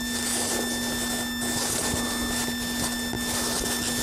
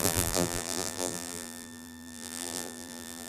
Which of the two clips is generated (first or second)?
second